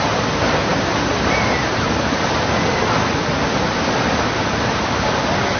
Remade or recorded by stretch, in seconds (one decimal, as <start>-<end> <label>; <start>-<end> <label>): 0.0-5.6 recorded